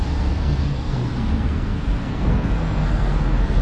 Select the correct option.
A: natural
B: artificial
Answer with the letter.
B